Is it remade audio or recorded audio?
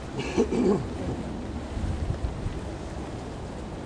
recorded